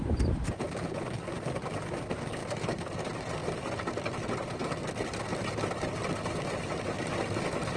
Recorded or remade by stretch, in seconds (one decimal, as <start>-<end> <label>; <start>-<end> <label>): 0.0-7.8 recorded